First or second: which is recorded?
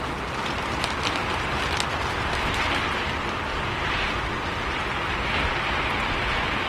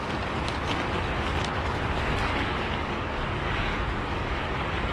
first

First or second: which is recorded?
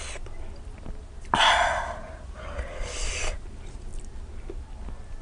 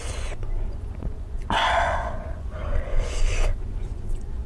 first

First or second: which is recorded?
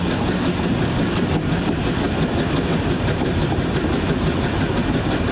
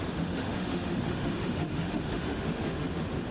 first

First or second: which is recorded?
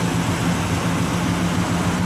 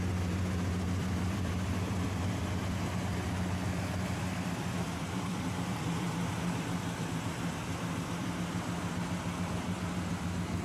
first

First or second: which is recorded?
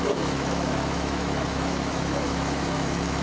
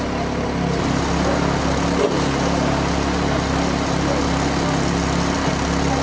second